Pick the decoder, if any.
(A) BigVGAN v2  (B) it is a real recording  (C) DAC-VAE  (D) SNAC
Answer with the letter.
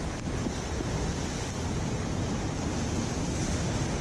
B